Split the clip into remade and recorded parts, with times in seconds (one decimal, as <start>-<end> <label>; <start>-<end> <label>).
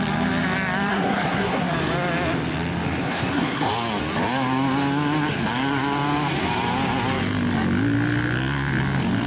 0.0-0.9 recorded; 0.9-1.7 remade; 1.7-3.0 recorded; 3.0-3.7 remade; 3.7-9.3 recorded